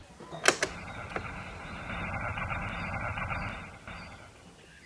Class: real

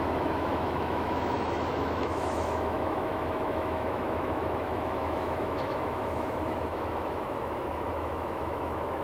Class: fake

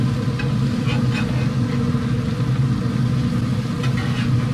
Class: real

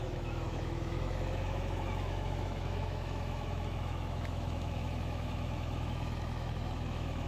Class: fake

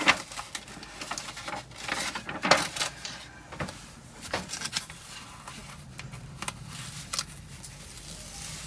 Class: real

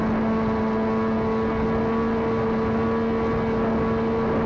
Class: real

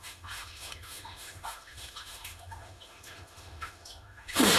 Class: fake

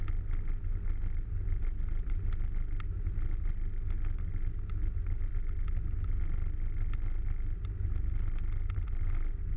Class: real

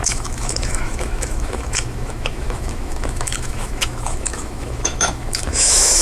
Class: fake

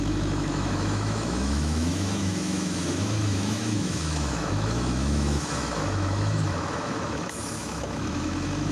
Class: fake